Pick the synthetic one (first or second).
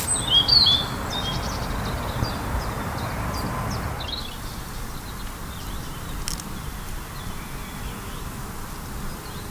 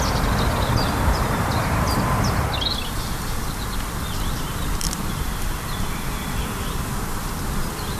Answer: second